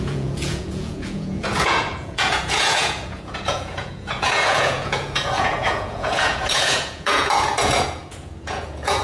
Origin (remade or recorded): remade